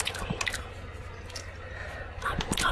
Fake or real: real